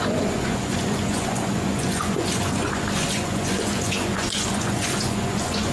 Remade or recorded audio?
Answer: remade